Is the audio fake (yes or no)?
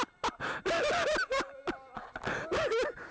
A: no